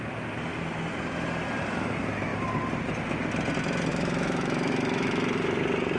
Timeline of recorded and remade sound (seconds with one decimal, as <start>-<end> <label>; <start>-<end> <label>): 0.0-3.9 recorded; 3.9-5.6 remade; 5.6-6.0 recorded